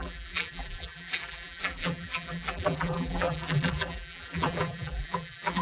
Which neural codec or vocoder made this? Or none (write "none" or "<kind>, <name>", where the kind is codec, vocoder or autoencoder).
vocoder, BigVGAN v2